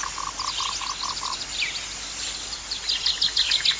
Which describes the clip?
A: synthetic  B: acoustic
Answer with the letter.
B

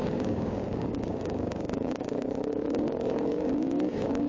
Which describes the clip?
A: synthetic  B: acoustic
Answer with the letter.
A